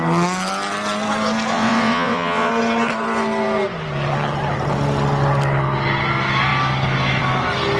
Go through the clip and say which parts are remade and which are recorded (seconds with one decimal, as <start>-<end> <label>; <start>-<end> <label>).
0.0-1.5 recorded; 1.5-2.5 remade; 2.5-7.8 recorded